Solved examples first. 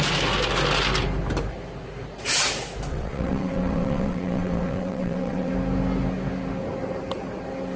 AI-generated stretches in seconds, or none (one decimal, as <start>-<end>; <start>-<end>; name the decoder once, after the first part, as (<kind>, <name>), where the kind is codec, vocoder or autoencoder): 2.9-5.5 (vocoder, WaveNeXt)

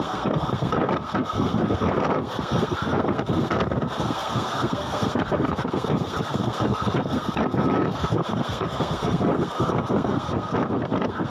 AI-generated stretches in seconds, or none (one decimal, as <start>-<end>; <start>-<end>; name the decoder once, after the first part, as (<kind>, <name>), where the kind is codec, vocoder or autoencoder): 0.0-11.3 (codec, SNAC)

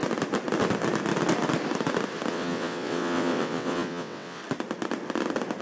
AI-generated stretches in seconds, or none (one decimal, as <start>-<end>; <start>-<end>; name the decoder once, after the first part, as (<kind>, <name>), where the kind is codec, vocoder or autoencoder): 2.3-4.4 (vocoder, WaveNeXt)

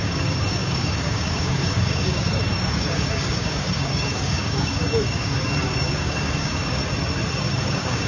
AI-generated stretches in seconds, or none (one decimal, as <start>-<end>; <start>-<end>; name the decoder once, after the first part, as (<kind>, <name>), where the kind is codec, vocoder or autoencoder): 0.0-6.8 (codec, DAC); 7.6-8.1

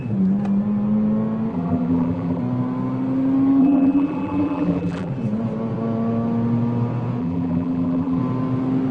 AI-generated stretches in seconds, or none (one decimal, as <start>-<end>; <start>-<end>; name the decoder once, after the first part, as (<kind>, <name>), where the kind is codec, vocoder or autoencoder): 1.5-2.4 (vocoder, BigVGAN v2); 3.6-5.1; 7.2-8.2

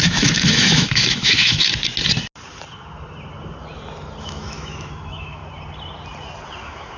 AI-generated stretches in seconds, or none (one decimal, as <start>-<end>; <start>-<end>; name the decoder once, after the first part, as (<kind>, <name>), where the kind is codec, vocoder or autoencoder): 0.0-1.7 (autoencoder, DAC-VAE); 4.2-5.4; 6.6-7.0

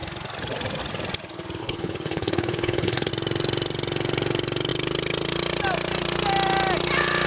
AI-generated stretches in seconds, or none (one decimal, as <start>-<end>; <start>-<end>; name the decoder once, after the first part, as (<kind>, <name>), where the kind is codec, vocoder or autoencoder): 1.6-3.1 (codec, HILCodec)